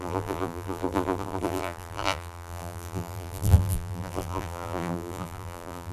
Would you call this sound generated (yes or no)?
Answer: yes